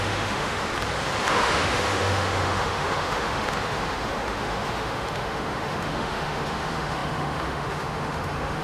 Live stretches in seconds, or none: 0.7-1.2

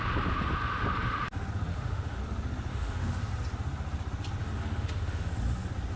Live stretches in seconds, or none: 0.0-1.7; 2.2-2.7; 3.3-4.4; 5.3-6.0

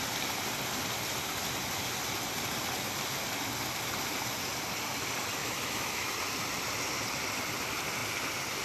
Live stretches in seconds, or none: 0.0-5.4; 6.1-8.6

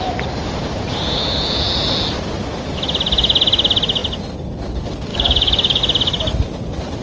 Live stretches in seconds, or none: 0.0-5.1; 5.8-7.0

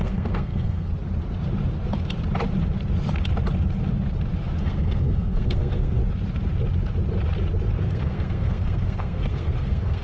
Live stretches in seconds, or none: 0.9-4.6; 6.0-7.8